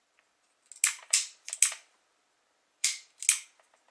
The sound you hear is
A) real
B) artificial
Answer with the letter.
A